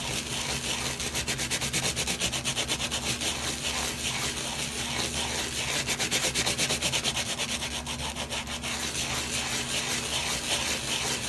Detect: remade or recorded recorded